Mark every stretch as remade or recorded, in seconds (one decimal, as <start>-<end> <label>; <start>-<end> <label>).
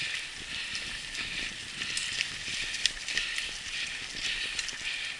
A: 0.0-5.2 recorded